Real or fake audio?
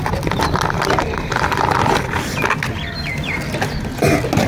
real